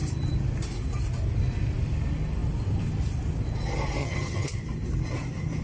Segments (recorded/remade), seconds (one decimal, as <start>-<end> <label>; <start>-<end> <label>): 0.0-4.0 recorded; 4.0-4.6 remade; 4.6-5.6 recorded